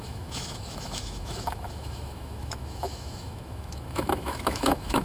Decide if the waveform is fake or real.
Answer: fake